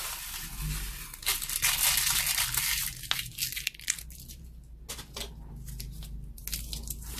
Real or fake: real